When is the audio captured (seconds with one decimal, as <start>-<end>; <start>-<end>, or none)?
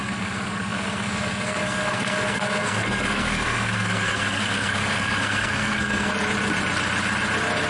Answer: 6.1-7.7